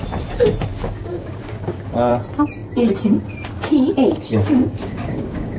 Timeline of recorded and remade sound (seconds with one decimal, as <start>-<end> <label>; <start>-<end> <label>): 0.0-0.7 recorded; 0.7-2.1 remade; 2.1-4.2 recorded; 4.2-5.6 remade